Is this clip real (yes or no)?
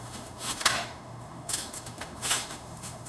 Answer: no